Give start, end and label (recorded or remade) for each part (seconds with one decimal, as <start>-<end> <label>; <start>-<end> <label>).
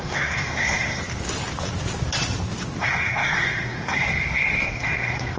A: 0.0-1.0 remade; 1.0-2.8 recorded; 2.8-5.4 remade